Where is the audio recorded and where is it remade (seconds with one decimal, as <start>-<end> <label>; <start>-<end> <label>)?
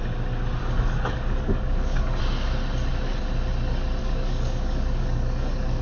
0.0-0.6 recorded; 0.6-2.2 remade; 2.2-4.0 recorded; 4.0-5.8 remade